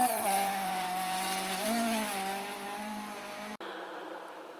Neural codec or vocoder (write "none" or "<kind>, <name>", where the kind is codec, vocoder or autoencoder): vocoder, BigVGAN v2